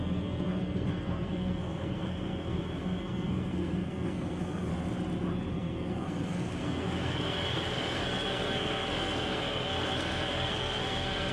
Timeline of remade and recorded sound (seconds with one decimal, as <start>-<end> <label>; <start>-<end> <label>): 0.0-4.7 remade; 4.7-5.5 recorded; 5.5-11.3 remade